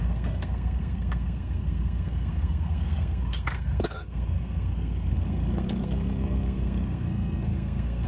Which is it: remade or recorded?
remade